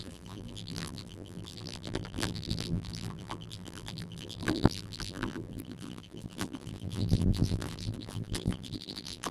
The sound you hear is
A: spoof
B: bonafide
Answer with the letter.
A